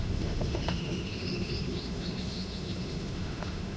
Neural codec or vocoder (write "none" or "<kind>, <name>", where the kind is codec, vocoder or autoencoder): autoencoder, DAC-VAE